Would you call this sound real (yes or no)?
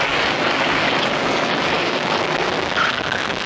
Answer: no